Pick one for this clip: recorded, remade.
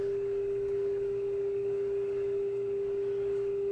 remade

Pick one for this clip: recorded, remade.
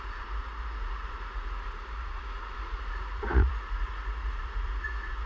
remade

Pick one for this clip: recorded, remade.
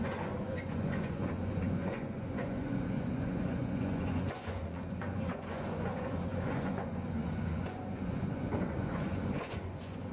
remade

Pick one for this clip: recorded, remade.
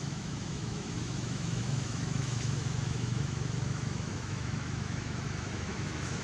remade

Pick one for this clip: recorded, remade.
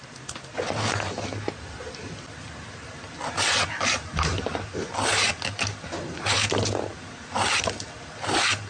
recorded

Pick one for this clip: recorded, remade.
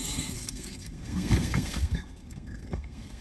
remade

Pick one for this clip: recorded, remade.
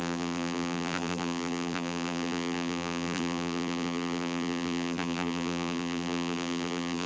remade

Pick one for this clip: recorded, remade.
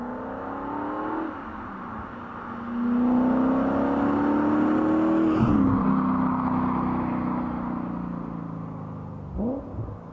recorded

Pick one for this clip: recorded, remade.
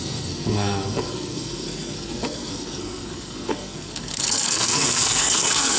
remade